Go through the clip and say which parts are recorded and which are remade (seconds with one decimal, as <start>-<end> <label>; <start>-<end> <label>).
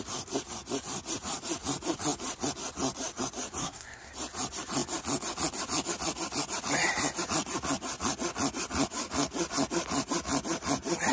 0.0-3.6 recorded; 3.6-4.1 remade; 4.1-11.1 recorded